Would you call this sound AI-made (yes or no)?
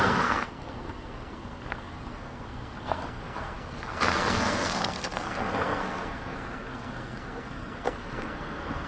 yes